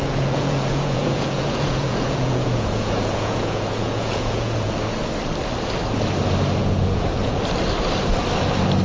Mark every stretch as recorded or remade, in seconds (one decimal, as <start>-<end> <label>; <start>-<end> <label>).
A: 0.0-4.7 remade; 4.7-6.6 recorded; 6.6-7.4 remade; 7.4-8.8 recorded